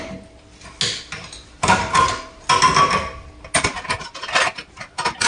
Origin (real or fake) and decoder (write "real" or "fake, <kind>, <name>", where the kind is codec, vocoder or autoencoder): real